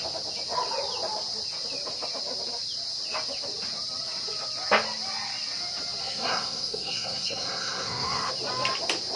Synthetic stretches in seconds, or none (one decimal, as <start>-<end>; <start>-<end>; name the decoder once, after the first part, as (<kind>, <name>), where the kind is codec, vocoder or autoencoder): 6.0-8.3 (codec, SNAC)

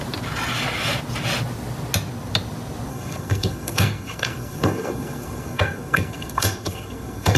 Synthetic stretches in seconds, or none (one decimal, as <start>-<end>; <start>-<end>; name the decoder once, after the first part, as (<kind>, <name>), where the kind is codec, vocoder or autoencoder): 2.9-7.4 (codec, SNAC)

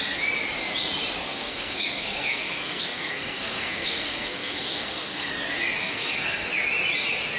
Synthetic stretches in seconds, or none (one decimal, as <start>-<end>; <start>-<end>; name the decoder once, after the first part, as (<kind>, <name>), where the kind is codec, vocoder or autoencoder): 1.2-5.3 (codec, SNAC); 5.8-6.5

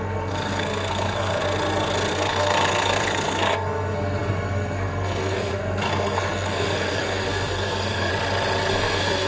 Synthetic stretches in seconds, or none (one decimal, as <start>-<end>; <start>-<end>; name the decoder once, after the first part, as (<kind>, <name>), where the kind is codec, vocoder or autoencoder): 0.0-1.4 (codec, SNAC); 2.1-8.1; 8.7-9.3

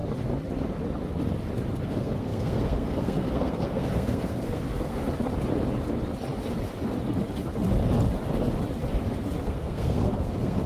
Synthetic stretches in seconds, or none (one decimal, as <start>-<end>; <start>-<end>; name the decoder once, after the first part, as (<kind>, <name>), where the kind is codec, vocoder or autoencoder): 1.8-5.0 (codec, SNAC); 9.4-10.7

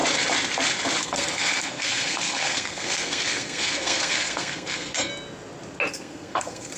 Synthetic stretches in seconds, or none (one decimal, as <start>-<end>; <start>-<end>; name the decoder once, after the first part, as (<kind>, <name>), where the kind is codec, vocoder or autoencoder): 1.0-5.1 (codec, SNAC); 5.9-6.8

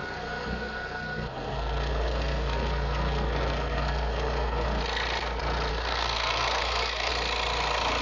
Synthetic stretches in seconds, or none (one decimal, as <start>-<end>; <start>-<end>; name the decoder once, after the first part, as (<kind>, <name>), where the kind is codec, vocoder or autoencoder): 0.0-4.8 (codec, SNAC); 5.7-7.1

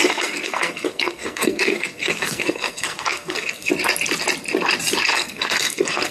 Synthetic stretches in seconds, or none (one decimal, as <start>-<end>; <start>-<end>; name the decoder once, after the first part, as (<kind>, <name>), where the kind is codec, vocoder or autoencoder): 0.0-3.7 (codec, SNAC); 5.1-6.1